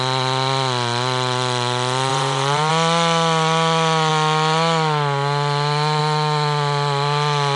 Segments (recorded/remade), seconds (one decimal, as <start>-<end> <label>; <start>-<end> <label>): 0.0-2.1 recorded; 2.1-2.7 remade; 2.7-7.6 recorded